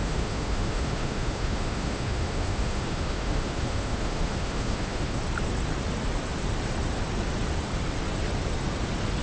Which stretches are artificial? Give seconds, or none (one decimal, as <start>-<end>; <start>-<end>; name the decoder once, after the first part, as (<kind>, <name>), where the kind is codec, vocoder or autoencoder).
0.0-5.2 (autoencoder, DAC-VAE)